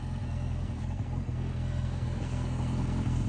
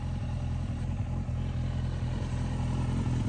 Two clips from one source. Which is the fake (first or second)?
first